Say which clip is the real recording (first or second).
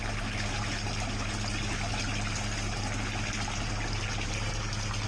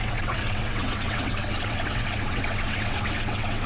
first